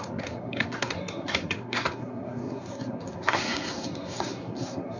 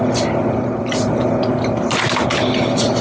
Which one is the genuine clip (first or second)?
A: second